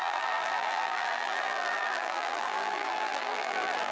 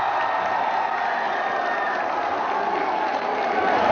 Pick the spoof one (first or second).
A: first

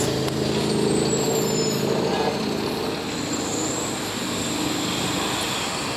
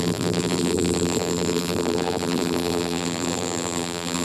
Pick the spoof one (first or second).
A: second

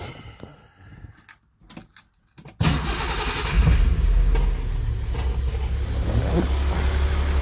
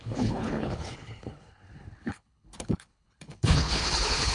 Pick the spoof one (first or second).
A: second